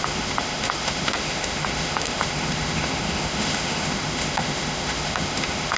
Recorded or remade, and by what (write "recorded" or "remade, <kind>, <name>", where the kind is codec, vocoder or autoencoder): remade, autoencoder, DAC-VAE